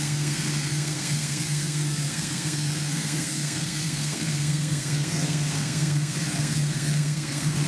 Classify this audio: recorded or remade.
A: remade